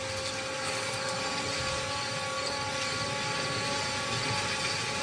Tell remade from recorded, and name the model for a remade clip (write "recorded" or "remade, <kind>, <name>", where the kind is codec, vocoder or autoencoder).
recorded